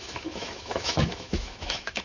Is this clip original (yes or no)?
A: no